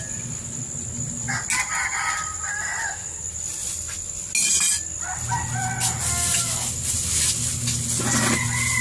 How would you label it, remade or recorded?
recorded